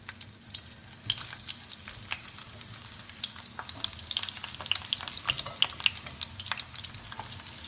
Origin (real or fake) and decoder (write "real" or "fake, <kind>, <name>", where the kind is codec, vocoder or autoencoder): real